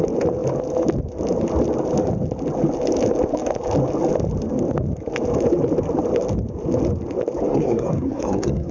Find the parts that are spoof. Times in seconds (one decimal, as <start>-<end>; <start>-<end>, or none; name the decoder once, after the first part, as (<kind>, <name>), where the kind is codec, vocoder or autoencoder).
7.5-8.7 (codec, SNAC)